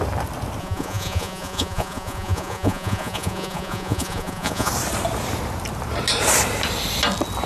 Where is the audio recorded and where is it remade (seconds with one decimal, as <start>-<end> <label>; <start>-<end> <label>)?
0.0-0.6 recorded; 0.6-4.7 remade; 4.7-7.5 recorded

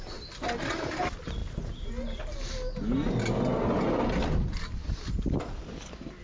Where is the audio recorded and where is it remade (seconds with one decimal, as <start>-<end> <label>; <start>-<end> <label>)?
0.0-6.2 recorded